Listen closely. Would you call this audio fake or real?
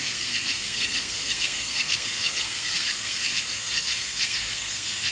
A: fake